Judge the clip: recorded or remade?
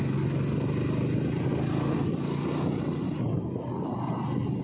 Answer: recorded